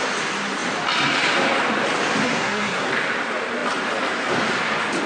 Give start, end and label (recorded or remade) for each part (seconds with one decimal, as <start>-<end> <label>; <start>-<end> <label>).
0.0-2.2 recorded; 2.2-2.9 remade; 2.9-5.1 recorded